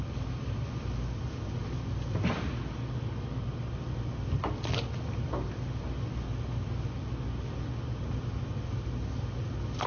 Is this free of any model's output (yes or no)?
yes